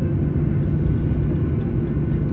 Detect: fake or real real